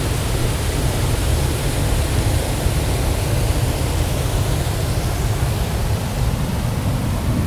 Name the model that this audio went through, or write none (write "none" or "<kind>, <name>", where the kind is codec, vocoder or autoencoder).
none